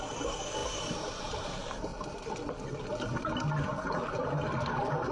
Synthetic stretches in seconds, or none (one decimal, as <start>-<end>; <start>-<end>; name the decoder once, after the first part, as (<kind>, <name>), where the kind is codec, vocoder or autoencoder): 0.0-1.9 (vocoder, BigVGAN v2)